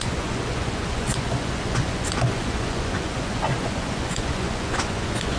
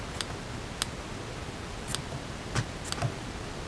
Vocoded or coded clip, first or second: first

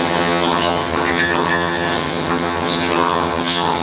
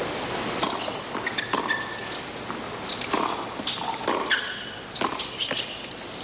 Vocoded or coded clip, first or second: first